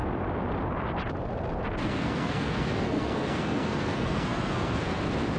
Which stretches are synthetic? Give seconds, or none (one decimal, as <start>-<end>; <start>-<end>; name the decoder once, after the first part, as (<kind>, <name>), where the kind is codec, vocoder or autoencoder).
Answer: 1.8-5.0 (codec, SNAC)